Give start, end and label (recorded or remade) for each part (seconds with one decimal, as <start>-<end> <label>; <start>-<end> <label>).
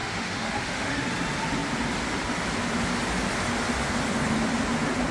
0.0-1.0 remade; 1.0-5.1 recorded